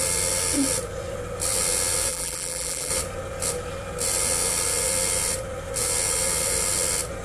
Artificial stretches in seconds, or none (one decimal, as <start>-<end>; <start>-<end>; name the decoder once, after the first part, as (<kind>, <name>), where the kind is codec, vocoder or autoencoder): 2.1-2.9 (vocoder, BigVGAN v2)